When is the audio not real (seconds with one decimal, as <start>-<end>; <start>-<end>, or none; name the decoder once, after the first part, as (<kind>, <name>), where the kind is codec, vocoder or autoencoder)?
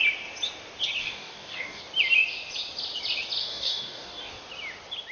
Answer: 1.0-1.8 (codec, DAC); 3.4-4.4